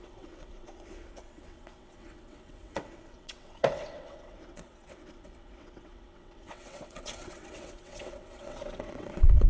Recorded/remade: remade